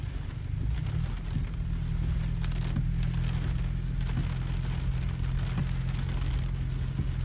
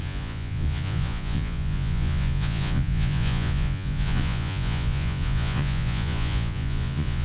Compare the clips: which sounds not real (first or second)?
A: second